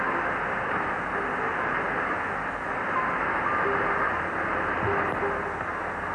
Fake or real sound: real